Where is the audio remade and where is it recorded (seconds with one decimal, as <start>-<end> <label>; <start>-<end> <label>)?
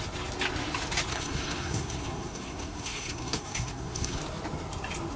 0.0-1.1 recorded; 1.1-4.2 remade; 4.2-5.2 recorded